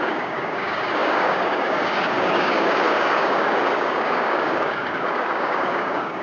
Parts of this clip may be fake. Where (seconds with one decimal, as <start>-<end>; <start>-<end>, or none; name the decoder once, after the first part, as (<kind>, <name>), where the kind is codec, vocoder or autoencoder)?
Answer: 0.0-6.2 (codec, DAC)